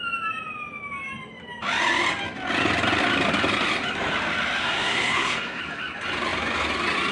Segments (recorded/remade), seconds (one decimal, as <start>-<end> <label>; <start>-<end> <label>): 0.0-4.6 recorded; 4.6-5.6 remade; 5.6-7.1 recorded